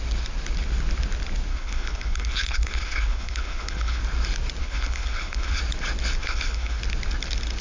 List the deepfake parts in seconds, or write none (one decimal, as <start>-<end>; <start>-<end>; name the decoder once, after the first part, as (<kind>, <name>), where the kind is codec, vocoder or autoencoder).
1.5-4.0 (codec, HILCodec); 4.6-5.6; 6.2-6.8